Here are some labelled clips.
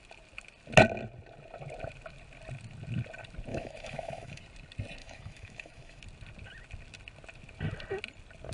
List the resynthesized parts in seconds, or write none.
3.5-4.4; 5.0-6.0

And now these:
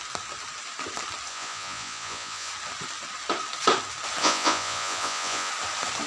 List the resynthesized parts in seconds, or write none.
1.3-2.5; 4.2-5.5

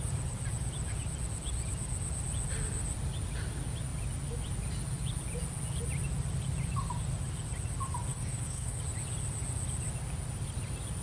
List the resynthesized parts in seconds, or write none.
8.1-8.8